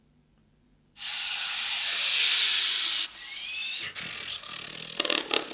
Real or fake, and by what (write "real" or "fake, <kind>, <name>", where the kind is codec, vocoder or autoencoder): real